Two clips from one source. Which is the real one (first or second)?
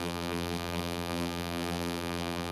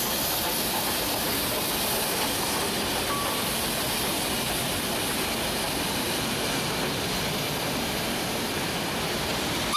second